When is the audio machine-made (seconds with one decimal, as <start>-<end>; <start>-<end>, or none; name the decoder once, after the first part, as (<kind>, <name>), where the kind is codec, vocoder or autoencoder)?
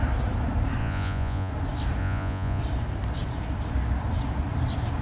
0.8-1.5 (vocoder, Vocos); 2.0-2.6